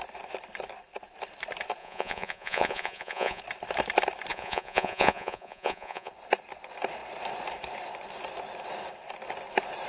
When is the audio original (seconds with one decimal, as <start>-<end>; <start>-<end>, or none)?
0.0-1.8; 3.4-4.3; 6.1-9.9